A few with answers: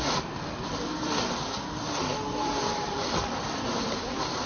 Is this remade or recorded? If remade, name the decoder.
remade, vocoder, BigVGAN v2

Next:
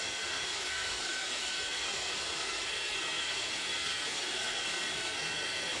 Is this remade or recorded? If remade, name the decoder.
remade, codec, SNAC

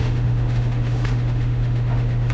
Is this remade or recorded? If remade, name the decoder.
remade, autoencoder, DAC-VAE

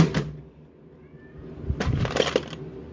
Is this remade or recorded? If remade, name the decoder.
recorded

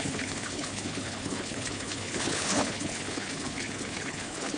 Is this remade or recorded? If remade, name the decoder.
remade, codec, HILCodec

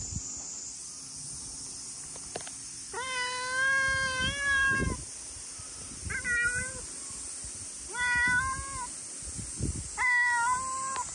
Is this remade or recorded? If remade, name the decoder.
recorded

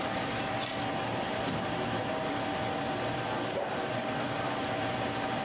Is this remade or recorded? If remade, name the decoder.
recorded